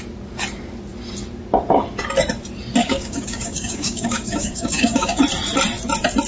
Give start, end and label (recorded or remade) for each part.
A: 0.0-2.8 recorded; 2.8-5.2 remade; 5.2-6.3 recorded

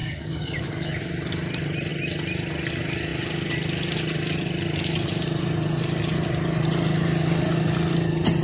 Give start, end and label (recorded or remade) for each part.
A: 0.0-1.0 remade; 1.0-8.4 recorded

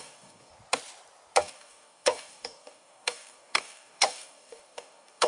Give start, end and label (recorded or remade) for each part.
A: 0.0-0.5 remade; 0.5-1.4 recorded; 1.4-5.3 remade